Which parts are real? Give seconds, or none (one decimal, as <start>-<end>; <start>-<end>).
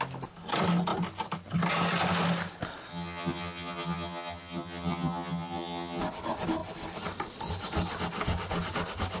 0.0-2.9; 6.0-9.2